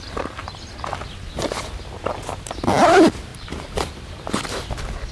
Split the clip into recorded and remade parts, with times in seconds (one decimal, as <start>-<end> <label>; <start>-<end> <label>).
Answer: 0.0-3.3 recorded; 3.3-3.9 remade; 3.9-5.1 recorded